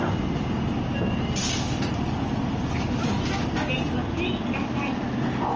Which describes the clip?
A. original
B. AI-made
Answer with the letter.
A